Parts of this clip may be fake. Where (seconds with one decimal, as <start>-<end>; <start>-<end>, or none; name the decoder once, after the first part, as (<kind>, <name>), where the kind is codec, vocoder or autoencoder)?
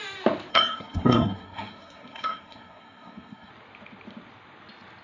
0.5-3.5 (codec, SNAC)